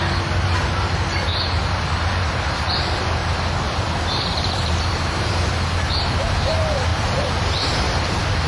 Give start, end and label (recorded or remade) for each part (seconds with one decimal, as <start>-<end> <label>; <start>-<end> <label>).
0.0-1.3 recorded; 1.3-2.7 remade; 2.7-3.2 recorded; 3.2-5.5 remade; 5.5-6.9 recorded; 6.9-7.6 remade; 7.6-8.5 recorded